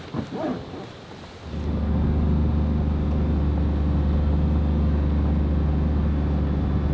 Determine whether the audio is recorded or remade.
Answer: recorded